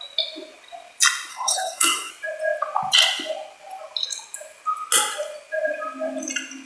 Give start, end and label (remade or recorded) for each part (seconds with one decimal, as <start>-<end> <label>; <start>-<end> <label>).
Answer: 0.0-1.3 recorded; 1.3-2.1 remade; 2.1-6.7 recorded